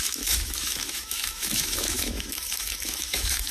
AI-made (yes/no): yes